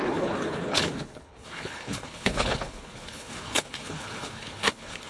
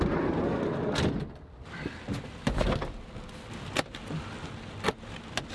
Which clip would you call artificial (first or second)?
first